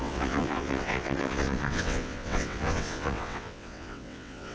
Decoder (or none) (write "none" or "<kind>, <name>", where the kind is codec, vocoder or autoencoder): vocoder, WaveNeXt